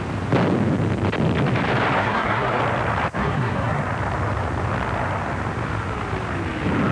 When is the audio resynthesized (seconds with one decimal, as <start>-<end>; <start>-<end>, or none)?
2.0-2.6; 3.2-3.8